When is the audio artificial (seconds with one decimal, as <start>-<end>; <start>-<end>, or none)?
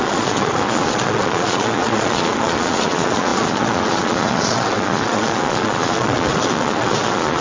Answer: 0.0-7.4